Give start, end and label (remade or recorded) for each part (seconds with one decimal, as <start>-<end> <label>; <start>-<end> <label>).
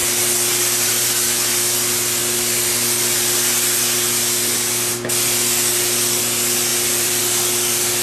0.0-6.7 recorded; 6.7-7.2 remade; 7.2-8.0 recorded